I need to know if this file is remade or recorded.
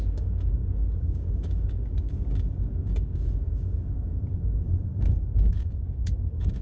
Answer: remade